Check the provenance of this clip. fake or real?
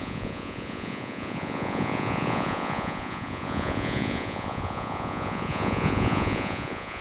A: fake